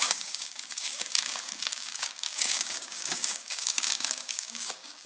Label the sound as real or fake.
fake